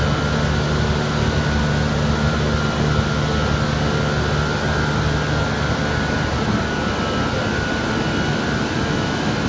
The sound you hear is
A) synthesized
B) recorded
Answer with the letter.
B